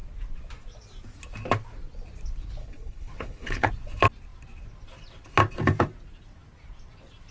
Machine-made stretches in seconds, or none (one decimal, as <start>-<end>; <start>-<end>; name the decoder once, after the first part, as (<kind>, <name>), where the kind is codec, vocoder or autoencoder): 2.6-3.7 (codec, HILCodec)